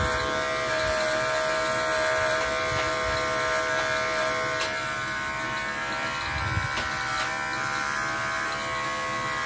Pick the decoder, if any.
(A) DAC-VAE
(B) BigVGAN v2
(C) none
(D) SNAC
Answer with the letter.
C